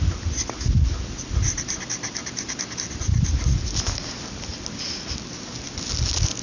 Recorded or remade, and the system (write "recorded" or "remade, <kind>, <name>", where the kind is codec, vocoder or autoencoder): recorded